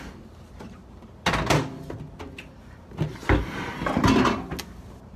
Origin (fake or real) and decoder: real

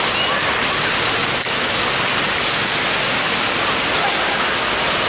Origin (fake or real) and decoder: real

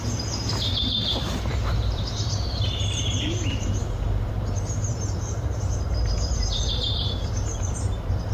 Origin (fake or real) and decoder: fake, vocoder, BigVGAN v2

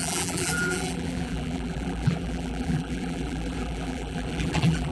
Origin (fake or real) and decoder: fake, vocoder, BigVGAN v2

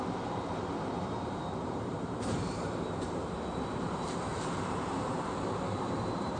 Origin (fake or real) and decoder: fake, vocoder, BigVGAN v2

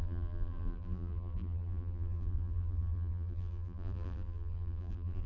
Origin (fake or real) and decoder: fake, vocoder, BigVGAN v2